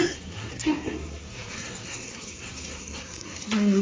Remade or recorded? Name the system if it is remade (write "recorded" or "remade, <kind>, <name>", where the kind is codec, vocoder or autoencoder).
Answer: remade, codec, SNAC